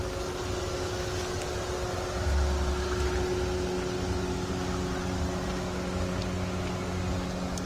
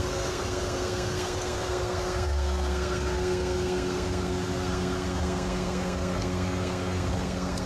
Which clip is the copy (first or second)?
second